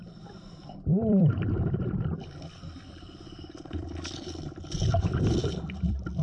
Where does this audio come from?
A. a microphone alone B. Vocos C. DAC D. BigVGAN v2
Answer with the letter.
D